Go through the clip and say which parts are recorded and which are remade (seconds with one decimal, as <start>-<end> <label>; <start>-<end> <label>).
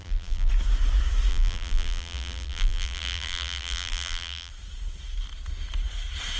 0.0-0.5 remade; 0.5-1.3 recorded; 1.3-4.5 remade; 4.5-6.4 recorded